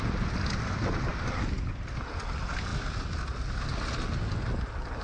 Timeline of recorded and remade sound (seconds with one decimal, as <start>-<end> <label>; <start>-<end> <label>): 0.0-5.0 recorded